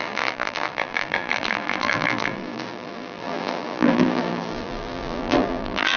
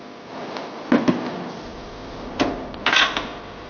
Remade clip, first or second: first